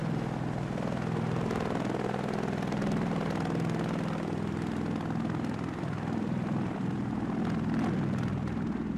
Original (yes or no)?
yes